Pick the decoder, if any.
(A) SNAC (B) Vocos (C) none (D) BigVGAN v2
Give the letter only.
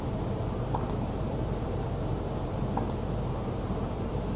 D